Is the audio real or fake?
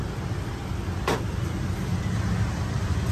real